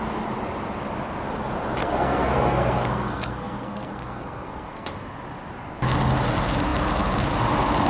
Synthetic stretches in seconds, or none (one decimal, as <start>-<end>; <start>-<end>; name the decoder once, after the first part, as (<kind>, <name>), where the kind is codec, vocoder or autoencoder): 1.8-4.9 (codec, SNAC)